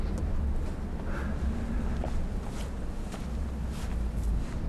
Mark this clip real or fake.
real